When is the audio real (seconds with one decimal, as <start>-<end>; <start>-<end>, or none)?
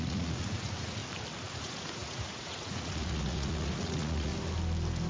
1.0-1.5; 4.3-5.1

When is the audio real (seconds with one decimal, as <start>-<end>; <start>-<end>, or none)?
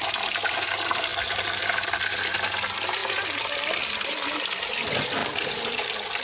0.0-3.0; 4.8-5.2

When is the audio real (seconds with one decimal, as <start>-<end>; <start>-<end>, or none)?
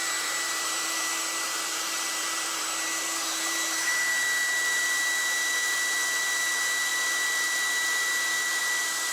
4.1-9.1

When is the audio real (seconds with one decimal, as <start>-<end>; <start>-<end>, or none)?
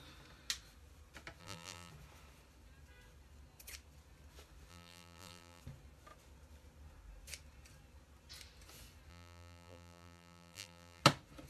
0.0-1.4; 1.9-4.7; 5.6-9.1; 11.0-11.5